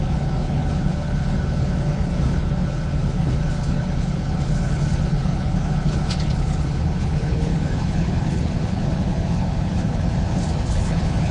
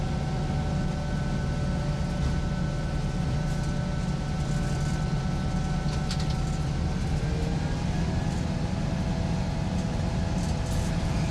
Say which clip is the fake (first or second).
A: first